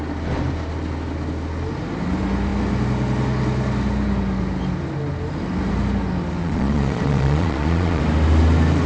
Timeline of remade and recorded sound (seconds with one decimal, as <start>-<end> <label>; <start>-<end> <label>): 0.0-6.4 recorded; 6.4-8.0 remade; 8.0-8.9 recorded